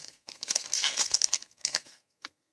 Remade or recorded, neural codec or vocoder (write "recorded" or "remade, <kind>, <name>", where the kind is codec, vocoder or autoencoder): remade, codec, SNAC